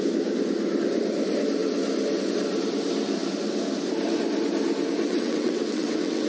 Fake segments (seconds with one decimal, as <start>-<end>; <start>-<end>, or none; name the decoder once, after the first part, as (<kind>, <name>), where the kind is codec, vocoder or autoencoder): 5.1-6.3 (vocoder, WaveNeXt)